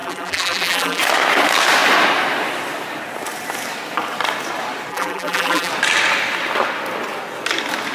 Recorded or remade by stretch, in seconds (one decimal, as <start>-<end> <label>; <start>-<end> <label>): 0.0-1.0 remade; 1.0-4.9 recorded; 4.9-5.7 remade; 5.7-7.9 recorded